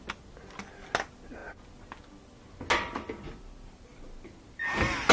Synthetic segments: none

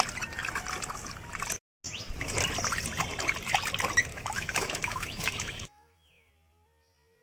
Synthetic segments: 4.1-6.3 (autoencoder, DAC-VAE)

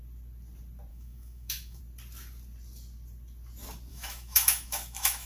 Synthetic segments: 0.9-1.8 (autoencoder, DAC-VAE); 3.9-5.3

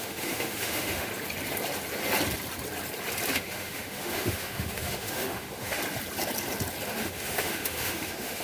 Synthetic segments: 0.0-1.1 (autoencoder, DAC-VAE); 3.3-5.8; 6.9-8.4

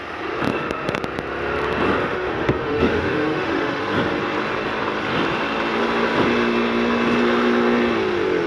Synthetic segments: 0.5-1.0 (autoencoder, DAC-VAE); 2.0-3.8

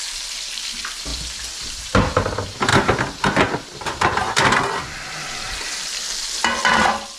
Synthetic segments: none